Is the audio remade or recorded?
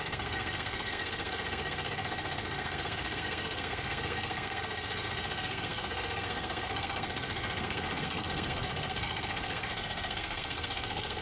remade